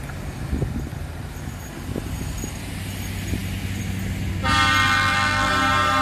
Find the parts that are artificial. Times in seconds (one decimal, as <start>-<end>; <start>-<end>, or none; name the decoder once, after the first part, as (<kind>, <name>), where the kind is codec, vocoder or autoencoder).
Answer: 4.8-5.5 (vocoder, BigVGAN v2)